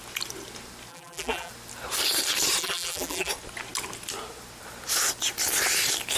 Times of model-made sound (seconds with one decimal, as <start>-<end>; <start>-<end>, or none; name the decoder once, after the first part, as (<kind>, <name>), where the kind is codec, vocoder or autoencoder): 0.9-1.5 (vocoder, BigVGAN v2); 2.6-3.3

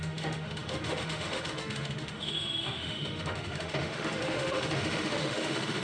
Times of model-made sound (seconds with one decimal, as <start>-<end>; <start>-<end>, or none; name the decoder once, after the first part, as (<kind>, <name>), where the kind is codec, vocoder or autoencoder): 0.0-5.8 (autoencoder, DAC-VAE)